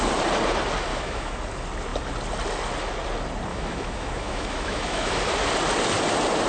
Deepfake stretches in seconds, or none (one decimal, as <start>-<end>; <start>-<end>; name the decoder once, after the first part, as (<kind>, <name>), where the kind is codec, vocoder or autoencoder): 0.9-1.4 (autoencoder, DAC-VAE); 3.5-5.2